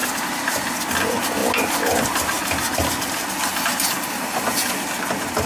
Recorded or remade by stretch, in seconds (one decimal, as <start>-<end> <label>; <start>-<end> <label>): 0.0-5.5 recorded